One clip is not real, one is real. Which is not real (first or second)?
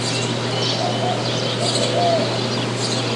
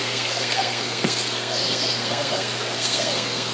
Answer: second